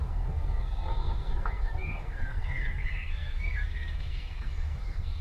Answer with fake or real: fake